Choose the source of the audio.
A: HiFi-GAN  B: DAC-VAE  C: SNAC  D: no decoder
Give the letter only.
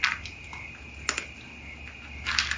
D